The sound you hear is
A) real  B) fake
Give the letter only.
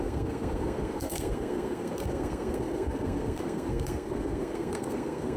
B